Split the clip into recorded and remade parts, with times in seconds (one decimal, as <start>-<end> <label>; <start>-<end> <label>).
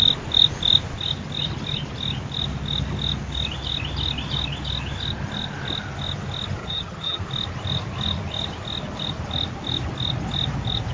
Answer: 0.0-6.6 recorded; 6.6-7.2 remade; 7.2-10.9 recorded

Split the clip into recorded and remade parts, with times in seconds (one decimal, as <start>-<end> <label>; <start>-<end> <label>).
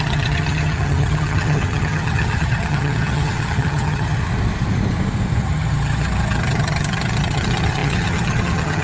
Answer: 0.0-4.2 remade; 4.2-5.4 recorded; 5.4-8.8 remade